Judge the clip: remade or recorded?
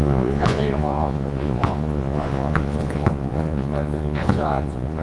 remade